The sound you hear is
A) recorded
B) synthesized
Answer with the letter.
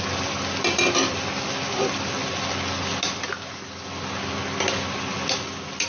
A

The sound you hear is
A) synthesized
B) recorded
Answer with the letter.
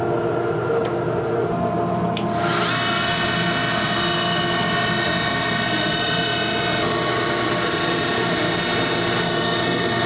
B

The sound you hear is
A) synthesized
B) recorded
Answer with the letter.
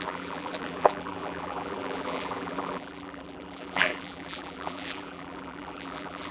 A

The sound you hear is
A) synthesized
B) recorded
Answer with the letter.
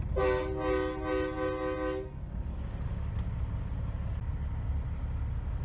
B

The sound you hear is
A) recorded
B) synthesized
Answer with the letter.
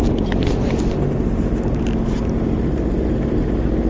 B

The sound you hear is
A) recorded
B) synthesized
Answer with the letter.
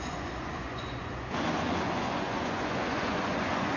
B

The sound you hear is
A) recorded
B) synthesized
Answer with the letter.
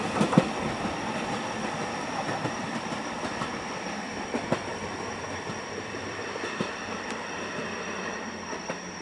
B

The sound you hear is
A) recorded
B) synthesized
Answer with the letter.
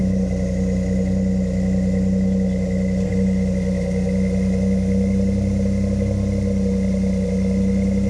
A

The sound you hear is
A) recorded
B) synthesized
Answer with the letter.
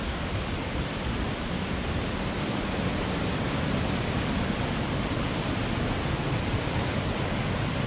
B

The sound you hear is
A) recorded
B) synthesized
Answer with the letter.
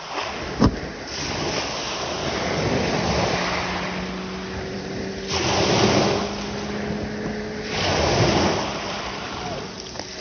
A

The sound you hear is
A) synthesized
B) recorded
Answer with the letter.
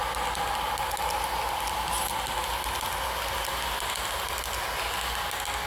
B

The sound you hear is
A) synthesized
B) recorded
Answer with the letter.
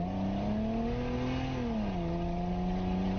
B